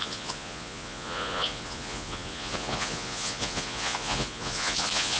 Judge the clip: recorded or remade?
remade